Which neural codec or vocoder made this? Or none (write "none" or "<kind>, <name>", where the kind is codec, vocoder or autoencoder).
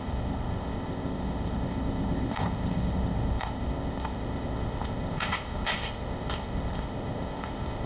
codec, ZipCodec